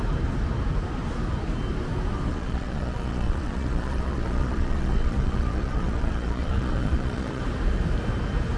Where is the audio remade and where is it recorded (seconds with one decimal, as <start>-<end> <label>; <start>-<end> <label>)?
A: 0.0-2.3 recorded; 2.3-7.4 remade; 7.4-8.6 recorded